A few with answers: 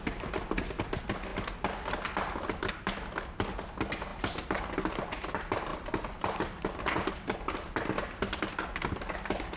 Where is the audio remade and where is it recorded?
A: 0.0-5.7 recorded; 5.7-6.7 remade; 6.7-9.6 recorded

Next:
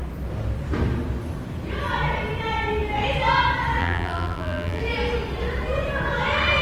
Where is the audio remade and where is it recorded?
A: 0.0-3.8 recorded; 3.8-4.8 remade; 4.8-6.6 recorded

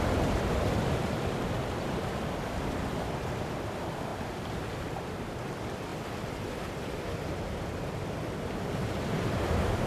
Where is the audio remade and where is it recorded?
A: 0.0-4.1 remade; 4.1-4.8 recorded; 4.8-5.9 remade; 5.9-6.7 recorded; 6.7-9.9 remade

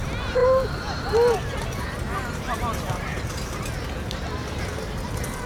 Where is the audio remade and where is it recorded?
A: 0.0-5.5 recorded

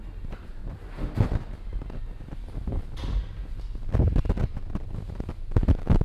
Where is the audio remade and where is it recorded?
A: 0.0-0.6 recorded; 0.6-1.1 remade; 1.1-1.7 recorded; 1.7-4.2 remade; 4.2-6.0 recorded

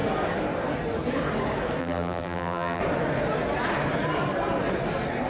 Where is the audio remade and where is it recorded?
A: 0.0-1.8 recorded; 1.8-2.8 remade; 2.8-5.3 recorded

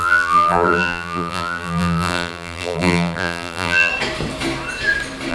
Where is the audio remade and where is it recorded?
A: 0.0-3.9 remade; 3.9-5.3 recorded